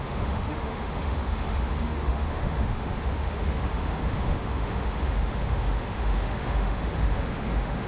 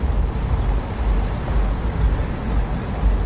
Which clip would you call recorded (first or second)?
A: second